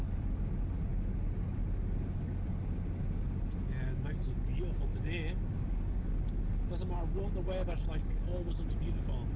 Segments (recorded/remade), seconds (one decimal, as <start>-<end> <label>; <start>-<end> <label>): 0.0-9.4 recorded